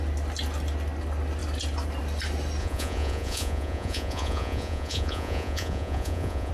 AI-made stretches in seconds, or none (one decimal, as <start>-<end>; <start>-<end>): 2.6-6.5